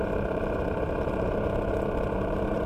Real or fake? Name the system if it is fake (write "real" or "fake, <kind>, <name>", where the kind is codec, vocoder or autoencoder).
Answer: fake, vocoder, BigVGAN v2